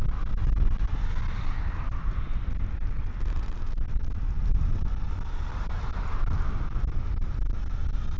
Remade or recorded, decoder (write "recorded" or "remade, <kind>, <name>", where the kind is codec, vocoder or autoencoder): recorded